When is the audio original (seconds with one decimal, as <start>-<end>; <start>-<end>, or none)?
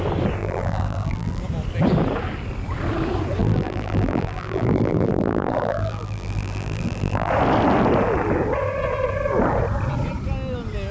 0.0-0.4; 1.4-3.4; 7.3-10.9